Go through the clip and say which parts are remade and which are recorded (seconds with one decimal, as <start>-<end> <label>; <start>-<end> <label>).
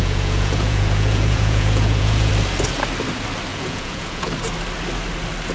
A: 0.0-2.3 remade; 2.3-3.5 recorded; 3.5-4.3 remade; 4.3-5.5 recorded